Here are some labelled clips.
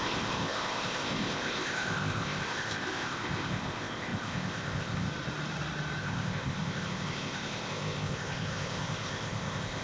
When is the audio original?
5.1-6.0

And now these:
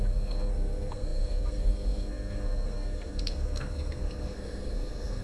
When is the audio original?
none

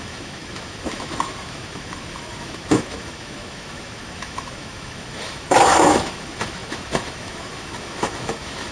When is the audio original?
none

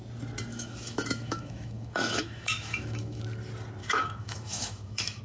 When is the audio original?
0.0-0.5; 3.2-3.8